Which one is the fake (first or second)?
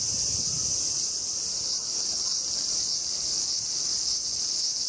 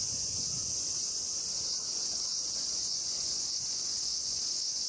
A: second